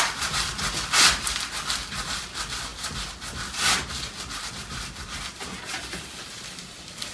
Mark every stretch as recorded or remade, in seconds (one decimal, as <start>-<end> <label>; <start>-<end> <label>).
0.0-7.1 recorded